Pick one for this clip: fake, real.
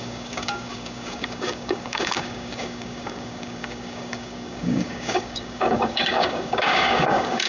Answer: fake